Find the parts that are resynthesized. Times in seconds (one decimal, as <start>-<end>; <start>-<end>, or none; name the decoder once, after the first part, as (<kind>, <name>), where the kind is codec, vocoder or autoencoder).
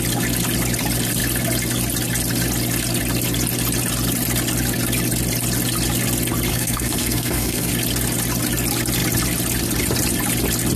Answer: 6.5-7.7 (codec, SNAC)